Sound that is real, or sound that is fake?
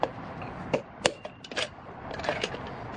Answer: real